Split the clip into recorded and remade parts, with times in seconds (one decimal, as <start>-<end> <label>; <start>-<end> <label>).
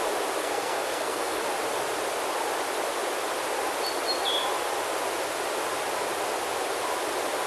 0.0-0.4 recorded; 0.4-1.4 remade; 1.4-7.5 recorded